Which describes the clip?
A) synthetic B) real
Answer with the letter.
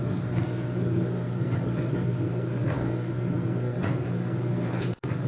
A